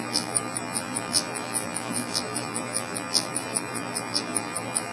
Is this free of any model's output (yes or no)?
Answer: no